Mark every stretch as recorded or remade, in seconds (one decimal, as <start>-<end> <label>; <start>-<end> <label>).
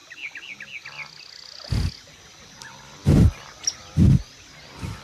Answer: 0.0-5.0 recorded